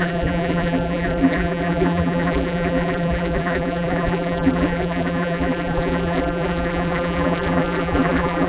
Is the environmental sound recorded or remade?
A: remade